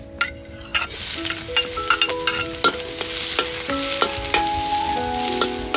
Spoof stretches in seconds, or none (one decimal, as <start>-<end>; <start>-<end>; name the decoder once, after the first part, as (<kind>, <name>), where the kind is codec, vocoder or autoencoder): none